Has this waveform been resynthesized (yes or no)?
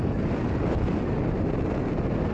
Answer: no